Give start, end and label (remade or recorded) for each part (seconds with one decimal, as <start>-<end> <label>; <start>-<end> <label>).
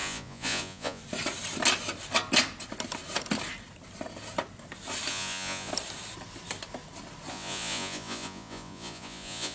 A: 0.0-1.0 remade; 1.0-5.1 recorded; 5.1-5.7 remade; 5.7-7.3 recorded; 7.3-9.5 remade